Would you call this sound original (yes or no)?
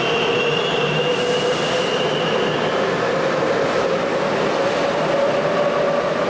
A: yes